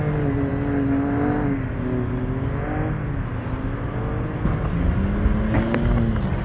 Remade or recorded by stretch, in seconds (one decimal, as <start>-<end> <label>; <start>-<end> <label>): 0.0-6.4 recorded